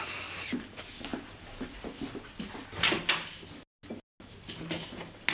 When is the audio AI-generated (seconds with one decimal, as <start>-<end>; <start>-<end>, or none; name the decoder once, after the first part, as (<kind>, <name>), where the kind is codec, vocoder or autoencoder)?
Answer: none